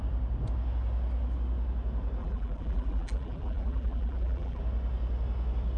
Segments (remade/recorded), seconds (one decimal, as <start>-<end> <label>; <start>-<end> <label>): 0.0-2.2 recorded; 2.2-4.6 remade; 4.6-5.8 recorded